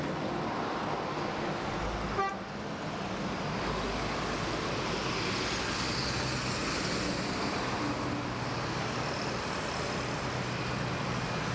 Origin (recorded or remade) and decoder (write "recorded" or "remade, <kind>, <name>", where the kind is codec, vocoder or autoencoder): recorded